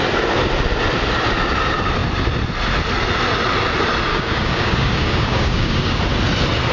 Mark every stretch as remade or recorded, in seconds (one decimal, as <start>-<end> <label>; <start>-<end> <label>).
0.0-4.1 recorded; 4.1-6.0 remade; 6.0-6.7 recorded